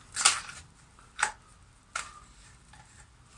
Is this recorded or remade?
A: recorded